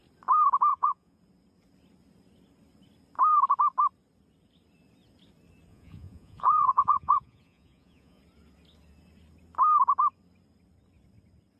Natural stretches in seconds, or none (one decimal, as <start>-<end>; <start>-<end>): 0.0-0.7; 1.2-5.7; 8.2-11.6